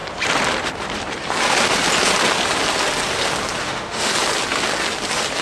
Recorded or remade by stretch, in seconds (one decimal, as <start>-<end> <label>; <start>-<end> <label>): 0.0-3.6 recorded; 3.6-4.1 remade; 4.1-5.4 recorded